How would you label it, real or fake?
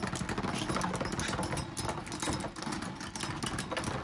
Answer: real